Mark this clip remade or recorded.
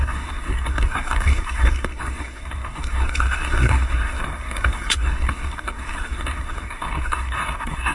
remade